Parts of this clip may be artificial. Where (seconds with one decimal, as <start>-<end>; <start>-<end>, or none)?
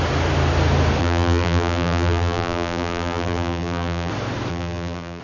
1.0-4.1; 4.5-5.2